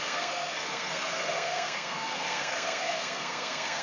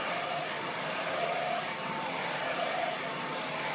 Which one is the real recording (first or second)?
second